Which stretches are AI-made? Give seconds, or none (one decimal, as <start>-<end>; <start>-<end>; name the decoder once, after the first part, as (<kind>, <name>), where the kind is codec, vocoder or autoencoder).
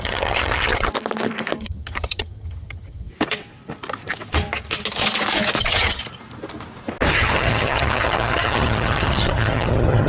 0.0-0.9 (vocoder, HiFi-GAN); 1.6-3.1; 5.6-6.0; 7.1-10.1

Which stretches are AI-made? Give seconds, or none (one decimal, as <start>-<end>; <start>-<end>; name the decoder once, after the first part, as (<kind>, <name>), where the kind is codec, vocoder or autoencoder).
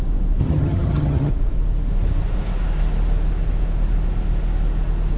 0.4-1.3 (vocoder, HiFi-GAN)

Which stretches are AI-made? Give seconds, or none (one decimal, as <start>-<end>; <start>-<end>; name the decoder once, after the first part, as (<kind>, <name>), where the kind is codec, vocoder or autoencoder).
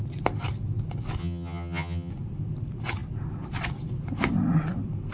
1.2-2.1 (vocoder, HiFi-GAN)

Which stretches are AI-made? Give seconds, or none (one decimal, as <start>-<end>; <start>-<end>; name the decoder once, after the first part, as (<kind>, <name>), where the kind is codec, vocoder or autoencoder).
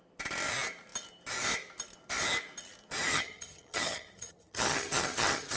3.1-5.6 (vocoder, HiFi-GAN)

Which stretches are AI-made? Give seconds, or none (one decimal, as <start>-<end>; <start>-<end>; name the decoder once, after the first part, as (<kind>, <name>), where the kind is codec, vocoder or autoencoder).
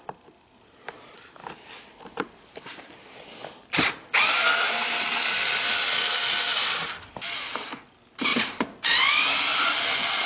none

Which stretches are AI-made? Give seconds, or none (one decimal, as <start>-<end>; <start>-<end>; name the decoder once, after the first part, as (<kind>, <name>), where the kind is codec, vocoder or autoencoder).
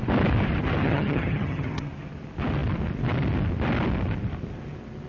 0.8-1.9 (vocoder, HiFi-GAN)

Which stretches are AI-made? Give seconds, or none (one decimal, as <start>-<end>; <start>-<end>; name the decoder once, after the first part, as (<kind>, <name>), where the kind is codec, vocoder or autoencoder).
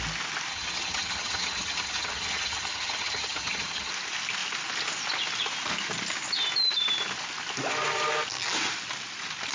0.5-3.9 (vocoder, HiFi-GAN)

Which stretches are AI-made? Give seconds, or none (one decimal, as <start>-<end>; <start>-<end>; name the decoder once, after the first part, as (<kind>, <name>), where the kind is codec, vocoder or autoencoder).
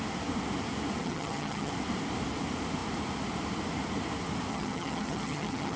1.0-1.7 (vocoder, HiFi-GAN); 4.5-5.8